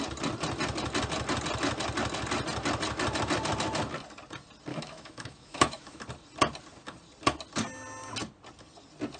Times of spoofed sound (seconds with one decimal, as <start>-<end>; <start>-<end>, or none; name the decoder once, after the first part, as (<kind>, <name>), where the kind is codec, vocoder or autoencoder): 4.7-6.0 (autoencoder, DAC-VAE)